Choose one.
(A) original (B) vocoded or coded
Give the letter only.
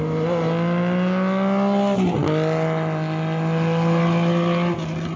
A